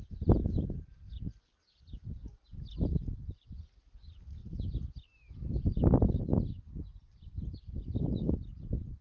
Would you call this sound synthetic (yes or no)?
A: no